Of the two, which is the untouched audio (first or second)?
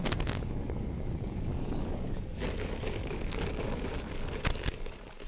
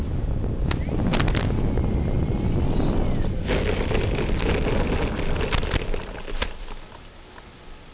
second